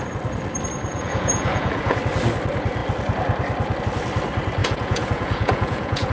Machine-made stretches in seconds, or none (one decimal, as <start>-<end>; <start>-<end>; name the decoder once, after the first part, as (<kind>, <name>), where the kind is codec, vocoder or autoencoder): 0.9-2.0 (vocoder, Vocos); 4.6-6.1